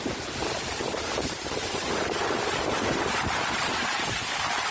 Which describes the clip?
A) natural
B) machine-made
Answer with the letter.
B